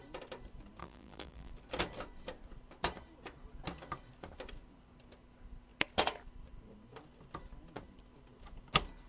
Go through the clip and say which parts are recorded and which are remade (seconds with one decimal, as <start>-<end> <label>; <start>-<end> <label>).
0.0-0.8 recorded; 0.8-1.5 remade; 1.5-9.1 recorded